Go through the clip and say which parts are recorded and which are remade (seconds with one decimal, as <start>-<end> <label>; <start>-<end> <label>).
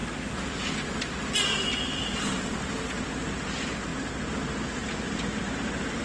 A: 0.0-6.0 recorded